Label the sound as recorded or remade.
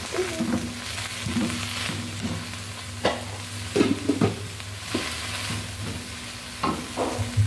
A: recorded